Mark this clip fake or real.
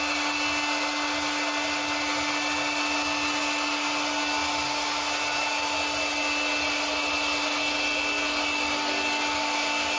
real